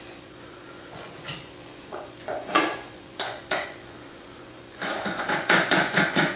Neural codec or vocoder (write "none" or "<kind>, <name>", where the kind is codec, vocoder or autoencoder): vocoder, Vocos